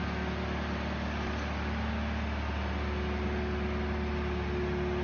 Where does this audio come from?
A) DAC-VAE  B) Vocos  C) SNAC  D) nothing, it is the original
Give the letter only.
D